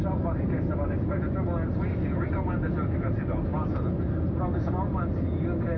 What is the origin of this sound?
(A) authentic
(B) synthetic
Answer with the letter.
A